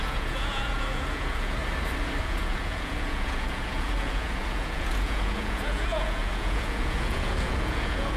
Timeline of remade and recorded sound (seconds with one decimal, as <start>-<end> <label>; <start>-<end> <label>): 0.0-1.6 remade; 1.6-2.2 recorded; 2.2-8.2 remade